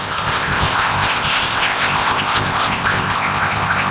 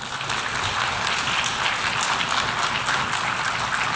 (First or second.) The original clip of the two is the second